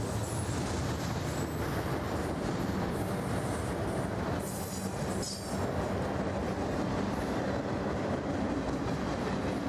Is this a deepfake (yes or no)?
no